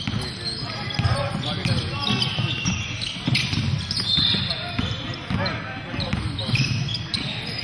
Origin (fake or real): real